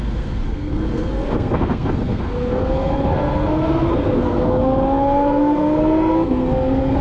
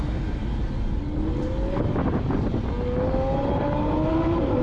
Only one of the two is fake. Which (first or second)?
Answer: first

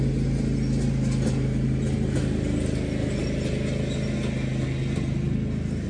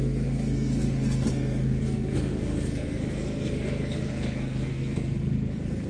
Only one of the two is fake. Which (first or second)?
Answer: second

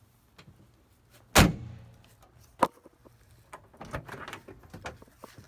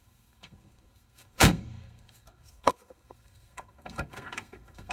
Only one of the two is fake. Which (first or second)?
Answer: second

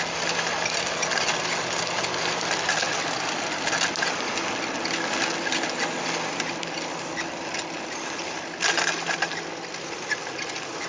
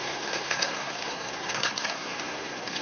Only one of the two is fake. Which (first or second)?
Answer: second